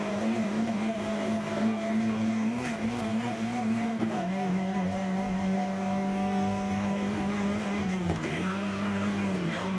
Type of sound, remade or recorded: remade